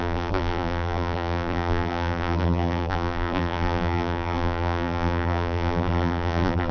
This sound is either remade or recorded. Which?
remade